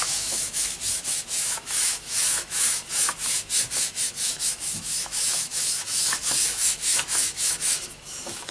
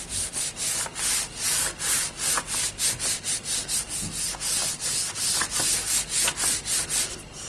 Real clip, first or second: second